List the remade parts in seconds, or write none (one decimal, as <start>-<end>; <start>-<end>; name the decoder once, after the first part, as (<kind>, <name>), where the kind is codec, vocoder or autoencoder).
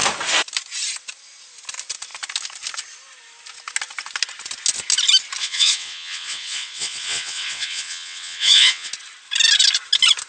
5.4-8.9 (vocoder, WaveNeXt)